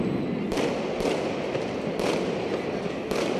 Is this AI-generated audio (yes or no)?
no